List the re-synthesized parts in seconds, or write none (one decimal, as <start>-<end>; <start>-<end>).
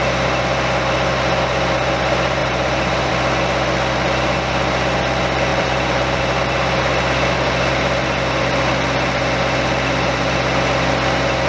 2.4-3.1; 5.5-6.2